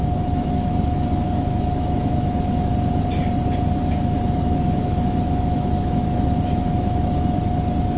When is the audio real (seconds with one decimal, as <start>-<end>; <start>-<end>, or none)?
2.7-3.9